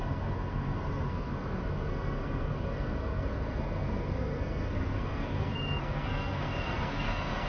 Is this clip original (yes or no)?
no